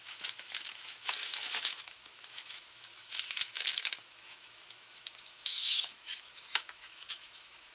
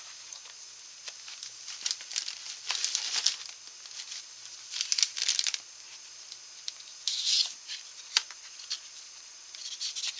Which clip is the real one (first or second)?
second